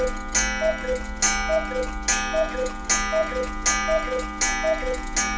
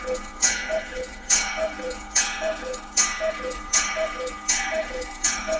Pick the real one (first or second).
first